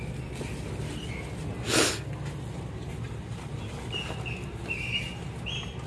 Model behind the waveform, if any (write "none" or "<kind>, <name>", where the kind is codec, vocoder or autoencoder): none